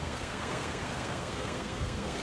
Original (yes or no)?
no